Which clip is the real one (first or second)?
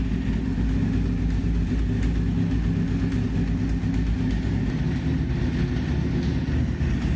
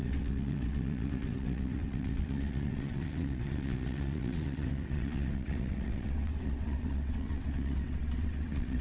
first